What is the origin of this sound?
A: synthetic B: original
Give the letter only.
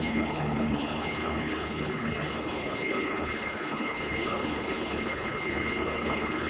A